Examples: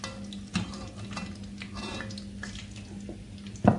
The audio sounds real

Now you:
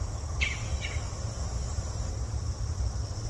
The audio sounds real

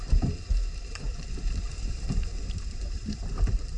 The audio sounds fake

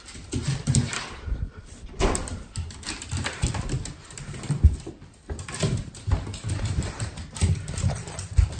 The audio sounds fake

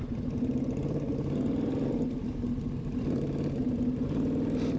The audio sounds fake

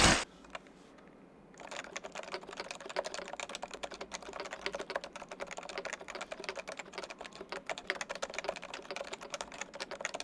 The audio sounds real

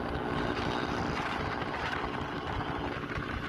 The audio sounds real